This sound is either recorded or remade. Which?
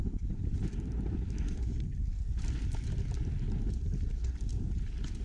recorded